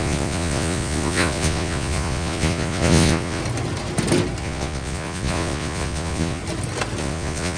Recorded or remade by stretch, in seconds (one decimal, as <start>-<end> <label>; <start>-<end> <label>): 0.0-3.4 remade; 3.4-4.4 recorded; 4.4-6.4 remade; 6.4-7.0 recorded; 7.0-7.6 remade